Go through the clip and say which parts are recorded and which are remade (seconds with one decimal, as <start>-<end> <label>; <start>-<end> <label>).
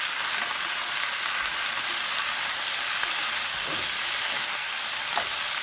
0.0-4.2 recorded; 4.2-4.8 remade; 4.8-5.6 recorded